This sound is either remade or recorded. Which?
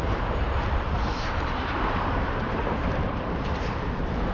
remade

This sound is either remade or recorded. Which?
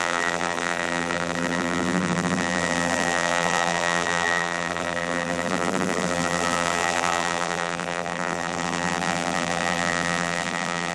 remade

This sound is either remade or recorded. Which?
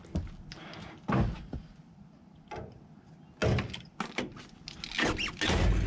recorded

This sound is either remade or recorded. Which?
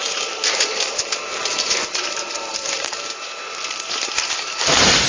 remade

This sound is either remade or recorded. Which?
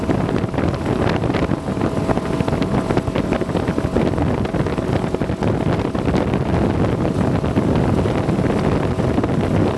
recorded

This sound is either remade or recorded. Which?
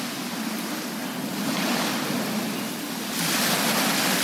recorded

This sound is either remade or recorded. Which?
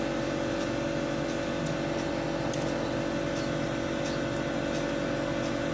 recorded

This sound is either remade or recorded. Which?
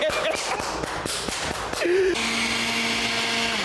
recorded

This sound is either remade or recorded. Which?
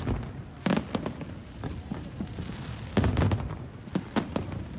recorded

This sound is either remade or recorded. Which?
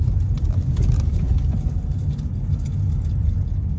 recorded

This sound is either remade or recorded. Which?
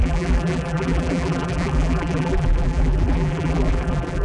remade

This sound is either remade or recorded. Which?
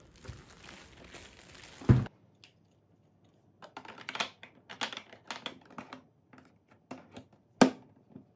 recorded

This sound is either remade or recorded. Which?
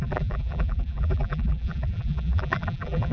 remade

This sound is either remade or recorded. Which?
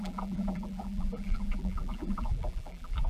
remade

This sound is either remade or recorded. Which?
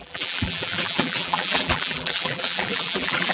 remade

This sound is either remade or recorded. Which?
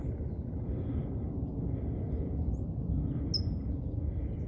recorded